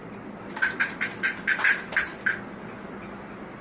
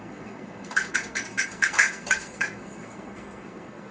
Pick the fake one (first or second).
second